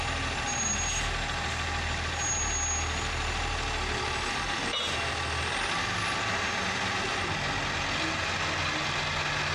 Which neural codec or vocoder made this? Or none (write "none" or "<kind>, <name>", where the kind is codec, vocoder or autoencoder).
none